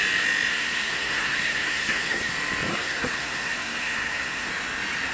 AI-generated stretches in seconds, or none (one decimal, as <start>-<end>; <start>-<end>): 0.5-2.3; 2.7-4.5